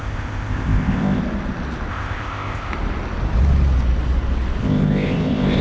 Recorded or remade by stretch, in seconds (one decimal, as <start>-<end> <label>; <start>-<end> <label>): 0.0-1.2 remade; 1.2-1.9 recorded; 1.9-2.7 remade; 2.7-4.6 recorded; 4.6-5.6 remade